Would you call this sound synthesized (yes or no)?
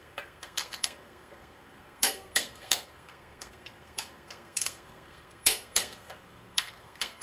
yes